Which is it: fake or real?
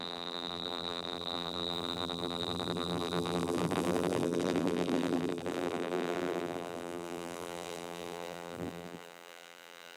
fake